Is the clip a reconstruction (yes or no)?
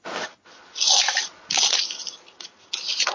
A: no